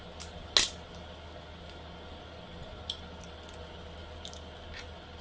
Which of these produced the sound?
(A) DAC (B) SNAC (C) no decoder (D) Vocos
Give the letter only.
C